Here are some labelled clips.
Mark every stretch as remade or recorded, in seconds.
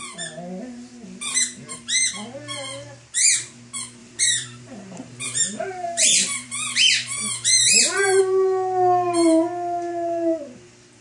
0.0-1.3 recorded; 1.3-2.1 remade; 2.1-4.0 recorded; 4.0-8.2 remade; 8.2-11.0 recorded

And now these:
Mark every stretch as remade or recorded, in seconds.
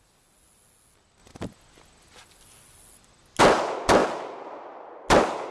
0.0-5.5 recorded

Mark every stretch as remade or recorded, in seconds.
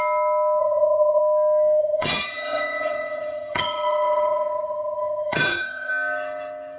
0.0-0.6 recorded; 0.6-1.2 remade; 1.2-1.8 recorded; 1.8-5.9 remade; 5.9-6.8 recorded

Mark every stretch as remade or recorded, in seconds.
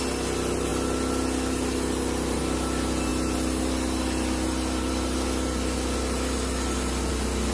0.0-7.5 recorded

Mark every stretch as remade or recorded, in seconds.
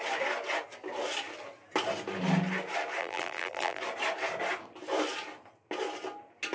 0.0-3.0 recorded; 3.0-3.8 remade; 3.8-6.5 recorded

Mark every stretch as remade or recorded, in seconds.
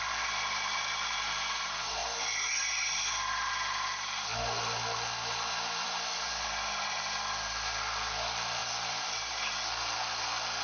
0.0-10.6 recorded